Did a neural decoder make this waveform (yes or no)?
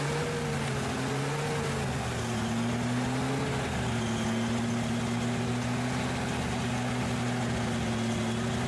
no